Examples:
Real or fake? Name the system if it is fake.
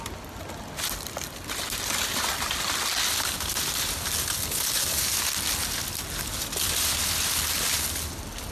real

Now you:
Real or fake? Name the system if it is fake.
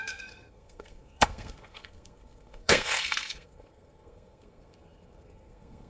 fake, codec, SNAC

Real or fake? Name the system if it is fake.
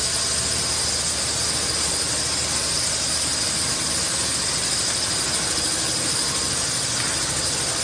real